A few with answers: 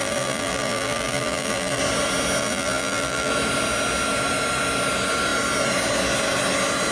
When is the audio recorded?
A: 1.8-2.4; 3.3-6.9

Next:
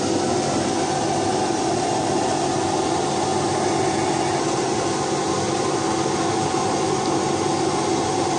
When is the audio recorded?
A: 0.0-1.3; 1.9-8.4

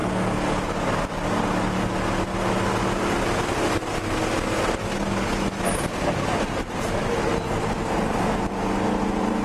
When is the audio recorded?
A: 0.0-9.4

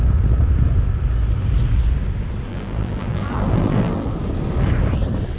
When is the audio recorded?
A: 0.0-2.5; 4.1-5.4

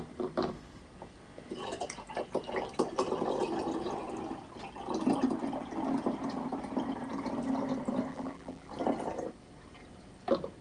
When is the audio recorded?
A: 0.0-8.1; 8.7-10.6

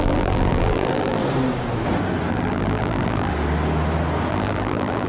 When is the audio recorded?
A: 1.2-2.3; 3.3-4.3

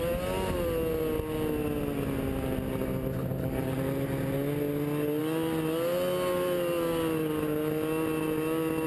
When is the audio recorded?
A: 0.0-8.9